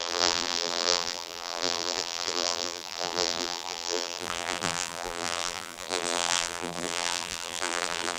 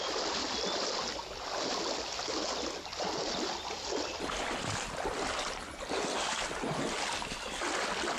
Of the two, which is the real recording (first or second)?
second